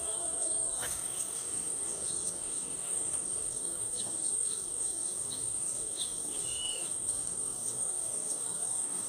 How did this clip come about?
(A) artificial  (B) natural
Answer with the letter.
A